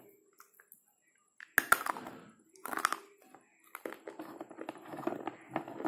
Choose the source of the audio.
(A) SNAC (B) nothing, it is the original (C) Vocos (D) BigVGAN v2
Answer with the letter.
B